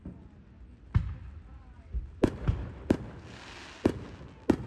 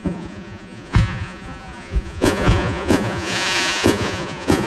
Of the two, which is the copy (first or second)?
second